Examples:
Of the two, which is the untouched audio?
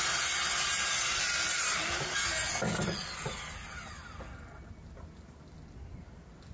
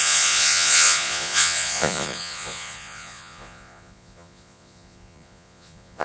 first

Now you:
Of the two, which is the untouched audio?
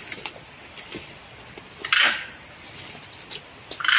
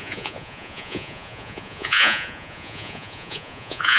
first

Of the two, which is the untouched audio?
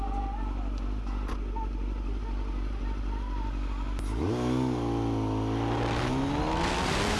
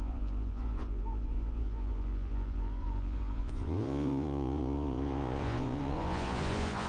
first